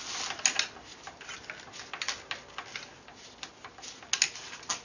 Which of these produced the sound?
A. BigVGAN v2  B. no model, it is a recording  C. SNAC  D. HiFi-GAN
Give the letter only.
B